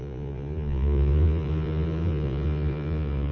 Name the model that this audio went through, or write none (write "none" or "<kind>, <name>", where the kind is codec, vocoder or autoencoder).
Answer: vocoder, Vocos